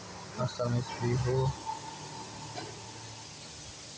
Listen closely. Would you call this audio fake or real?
real